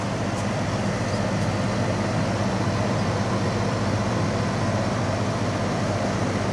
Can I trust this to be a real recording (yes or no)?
yes